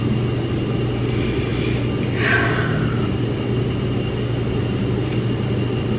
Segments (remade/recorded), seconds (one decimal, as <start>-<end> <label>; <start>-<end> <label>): 0.0-6.0 recorded